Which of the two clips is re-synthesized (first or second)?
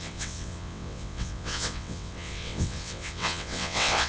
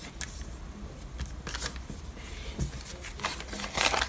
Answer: first